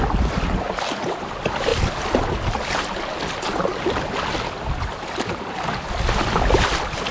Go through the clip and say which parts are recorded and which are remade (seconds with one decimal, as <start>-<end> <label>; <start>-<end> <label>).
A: 0.0-7.1 recorded